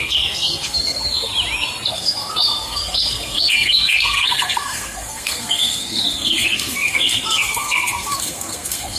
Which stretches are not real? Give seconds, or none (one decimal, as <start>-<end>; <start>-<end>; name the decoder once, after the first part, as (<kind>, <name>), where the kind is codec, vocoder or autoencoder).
0.0-1.3 (codec, SNAC); 1.9-9.0